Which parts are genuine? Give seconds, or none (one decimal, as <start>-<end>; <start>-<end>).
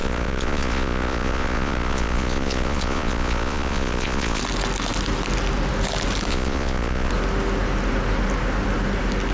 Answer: 4.4-6.3; 7.1-9.3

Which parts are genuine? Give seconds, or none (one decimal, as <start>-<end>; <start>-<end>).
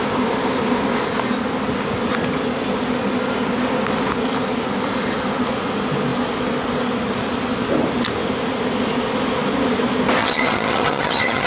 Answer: 0.0-10.2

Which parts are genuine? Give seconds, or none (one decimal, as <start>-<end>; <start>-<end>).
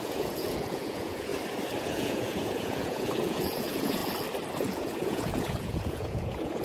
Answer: 1.3-1.8; 4.0-4.6